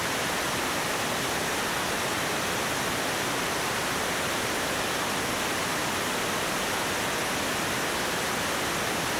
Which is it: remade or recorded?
recorded